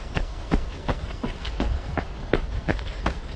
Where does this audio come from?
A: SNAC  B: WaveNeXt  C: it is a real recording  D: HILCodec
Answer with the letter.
A